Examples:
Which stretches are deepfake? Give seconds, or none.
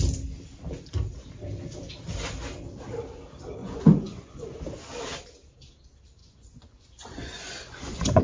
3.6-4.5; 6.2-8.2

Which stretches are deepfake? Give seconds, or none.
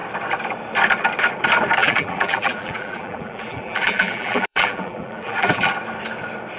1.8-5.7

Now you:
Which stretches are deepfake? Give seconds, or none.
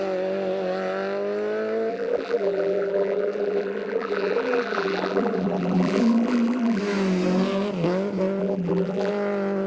1.9-6.8; 8.4-9.1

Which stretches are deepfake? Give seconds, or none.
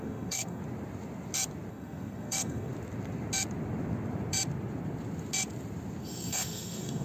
0.0-0.6; 1.7-2.7; 6.0-7.0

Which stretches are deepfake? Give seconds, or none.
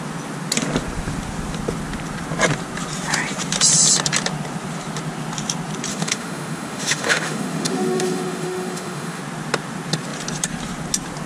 5.9-9.2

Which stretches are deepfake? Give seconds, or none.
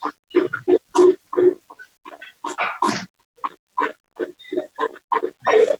none